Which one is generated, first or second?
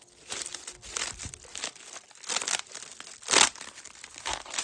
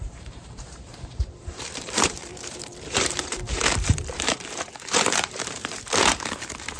second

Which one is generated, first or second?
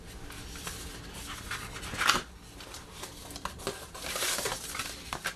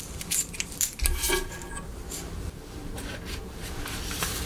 second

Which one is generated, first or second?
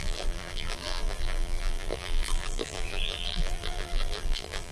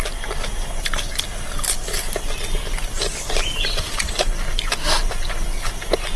first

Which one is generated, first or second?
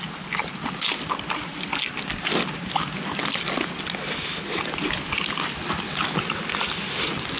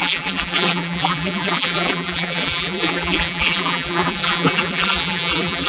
second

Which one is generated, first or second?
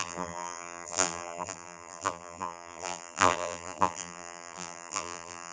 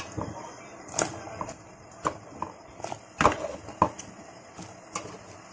first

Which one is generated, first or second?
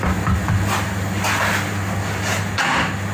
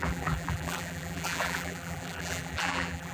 second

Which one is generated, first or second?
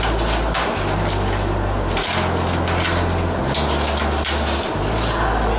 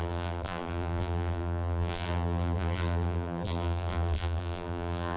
second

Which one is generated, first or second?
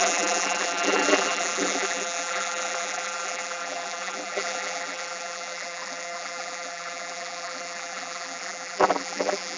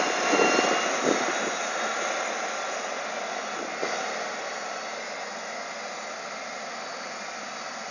first